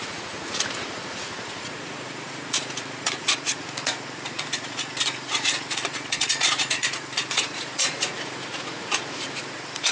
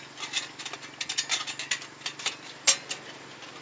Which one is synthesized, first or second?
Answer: first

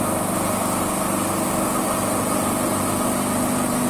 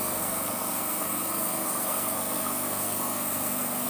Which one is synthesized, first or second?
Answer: second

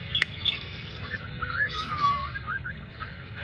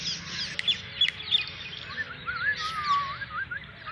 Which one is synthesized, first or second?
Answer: first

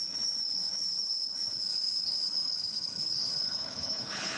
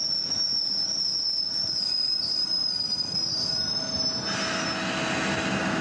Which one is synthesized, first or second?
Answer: first